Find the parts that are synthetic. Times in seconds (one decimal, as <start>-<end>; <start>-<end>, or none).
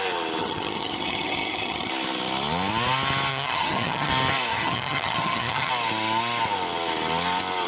0.4-1.9; 3.3-4.1; 4.5-5.7